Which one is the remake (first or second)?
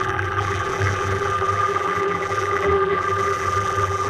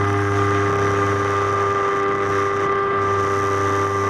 first